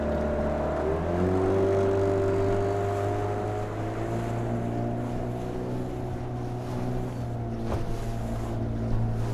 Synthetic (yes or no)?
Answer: no